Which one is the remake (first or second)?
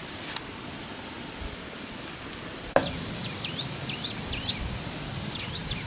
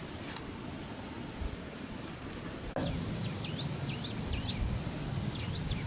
first